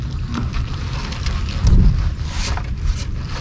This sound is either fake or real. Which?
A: real